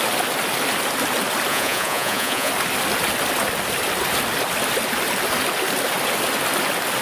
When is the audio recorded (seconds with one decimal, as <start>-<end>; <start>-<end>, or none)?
0.0-1.5; 2.5-7.0